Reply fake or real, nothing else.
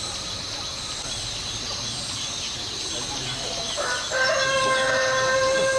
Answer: real